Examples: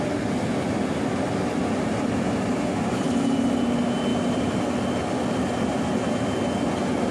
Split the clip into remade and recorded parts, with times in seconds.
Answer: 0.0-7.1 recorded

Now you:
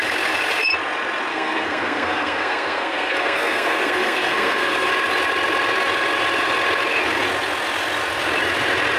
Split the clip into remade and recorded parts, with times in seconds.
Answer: 0.0-1.3 recorded; 1.3-4.9 remade; 4.9-9.0 recorded

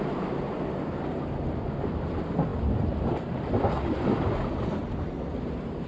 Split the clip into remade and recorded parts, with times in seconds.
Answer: 0.0-5.9 recorded

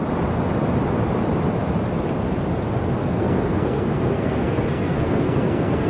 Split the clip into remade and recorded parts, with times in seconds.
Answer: 0.0-3.0 recorded; 3.0-5.9 remade

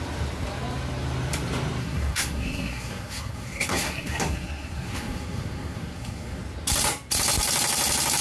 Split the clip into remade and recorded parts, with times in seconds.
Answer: 0.0-1.8 recorded; 1.8-6.4 remade; 6.4-8.2 recorded

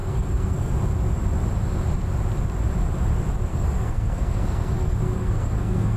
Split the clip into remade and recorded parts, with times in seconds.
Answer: 0.0-0.7 remade; 0.7-3.5 recorded; 3.5-6.0 remade